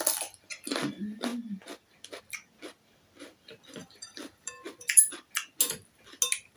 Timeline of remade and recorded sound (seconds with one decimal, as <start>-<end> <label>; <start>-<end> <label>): 0.0-3.8 recorded; 3.8-5.2 remade; 5.2-6.6 recorded